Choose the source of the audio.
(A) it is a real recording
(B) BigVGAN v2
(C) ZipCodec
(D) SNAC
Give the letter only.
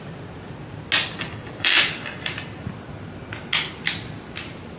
A